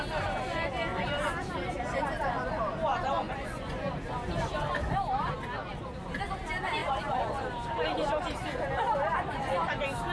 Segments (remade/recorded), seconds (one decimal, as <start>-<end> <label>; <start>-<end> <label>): 0.0-2.9 recorded; 2.9-3.7 remade; 3.7-10.1 recorded